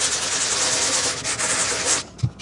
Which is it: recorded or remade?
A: recorded